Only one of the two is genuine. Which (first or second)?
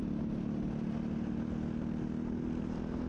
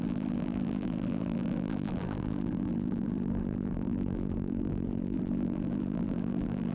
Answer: first